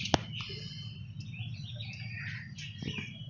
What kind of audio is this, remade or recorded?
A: recorded